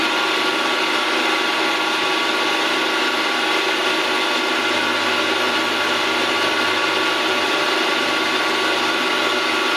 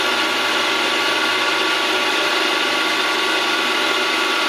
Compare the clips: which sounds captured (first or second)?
first